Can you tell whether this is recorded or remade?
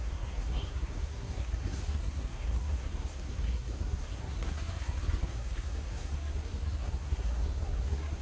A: remade